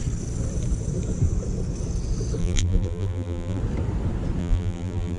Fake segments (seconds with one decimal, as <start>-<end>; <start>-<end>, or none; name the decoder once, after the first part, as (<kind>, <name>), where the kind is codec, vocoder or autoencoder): 2.4-3.6 (vocoder, BigVGAN v2); 4.4-5.2